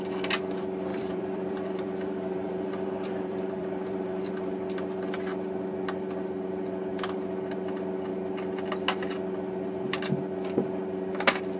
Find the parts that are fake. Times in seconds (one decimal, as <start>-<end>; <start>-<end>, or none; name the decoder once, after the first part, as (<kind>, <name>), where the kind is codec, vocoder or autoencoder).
0.9-4.3 (vocoder, BigVGAN v2)